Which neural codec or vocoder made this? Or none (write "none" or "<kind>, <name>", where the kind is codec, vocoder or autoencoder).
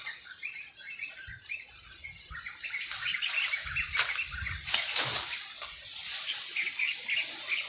none